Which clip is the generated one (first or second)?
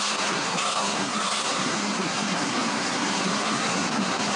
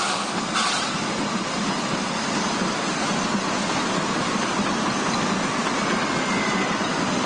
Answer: first